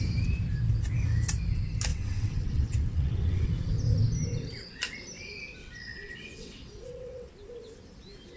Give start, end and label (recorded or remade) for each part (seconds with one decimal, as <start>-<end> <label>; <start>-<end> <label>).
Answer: 0.0-1.9 recorded; 1.9-3.5 remade; 3.5-5.6 recorded; 5.6-7.3 remade; 7.3-8.4 recorded